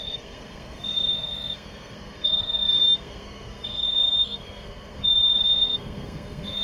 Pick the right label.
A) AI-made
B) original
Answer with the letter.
A